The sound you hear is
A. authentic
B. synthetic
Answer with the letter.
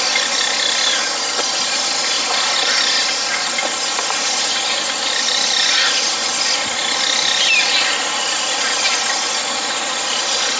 A